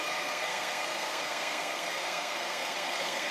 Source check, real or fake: fake